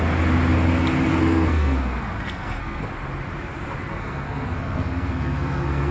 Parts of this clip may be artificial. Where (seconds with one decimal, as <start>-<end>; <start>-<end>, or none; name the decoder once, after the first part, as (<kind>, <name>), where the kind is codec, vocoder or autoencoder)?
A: 1.1-2.8 (codec, SNAC); 3.9-5.9